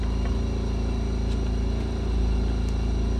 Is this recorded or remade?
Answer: recorded